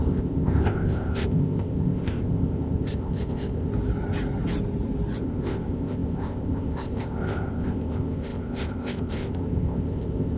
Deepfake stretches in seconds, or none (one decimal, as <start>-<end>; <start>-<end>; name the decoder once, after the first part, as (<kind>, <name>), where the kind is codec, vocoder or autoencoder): 0.0-3.7 (codec, ZipCodec); 5.2-10.4